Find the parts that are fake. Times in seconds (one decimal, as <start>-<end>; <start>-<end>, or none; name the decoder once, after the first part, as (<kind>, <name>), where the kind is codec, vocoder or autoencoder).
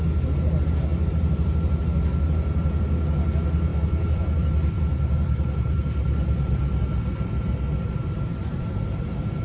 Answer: 0.9-1.8 (vocoder, BigVGAN v2); 3.7-6.8; 8.5-9.0